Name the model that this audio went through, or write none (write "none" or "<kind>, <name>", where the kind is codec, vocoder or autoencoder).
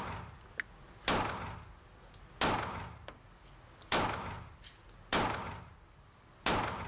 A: none